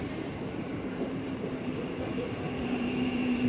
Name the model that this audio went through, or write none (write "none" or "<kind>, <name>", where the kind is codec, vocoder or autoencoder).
vocoder, BigVGAN v2